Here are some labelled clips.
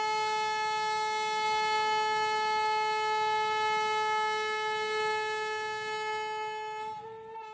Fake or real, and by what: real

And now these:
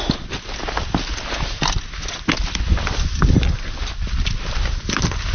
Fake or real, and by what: real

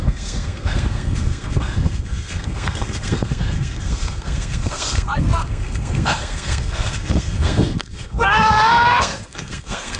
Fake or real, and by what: fake, codec, SNAC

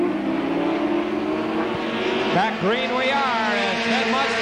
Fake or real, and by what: real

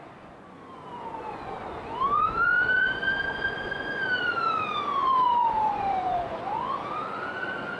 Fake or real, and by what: fake, vocoder, Vocos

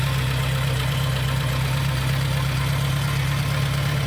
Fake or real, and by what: real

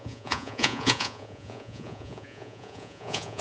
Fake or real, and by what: fake, vocoder, Vocos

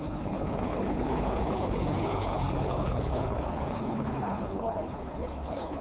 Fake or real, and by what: fake, codec, HILCodec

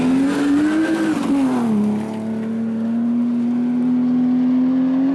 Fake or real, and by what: real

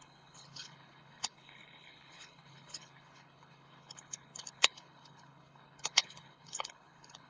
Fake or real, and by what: fake, codec, HILCodec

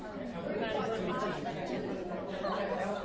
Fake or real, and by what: real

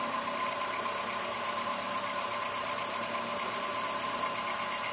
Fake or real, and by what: real